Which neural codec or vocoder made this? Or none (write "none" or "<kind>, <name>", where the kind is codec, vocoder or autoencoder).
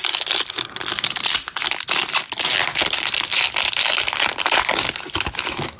none